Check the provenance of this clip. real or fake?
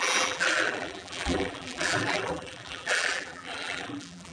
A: fake